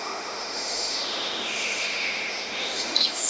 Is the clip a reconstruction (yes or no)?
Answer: yes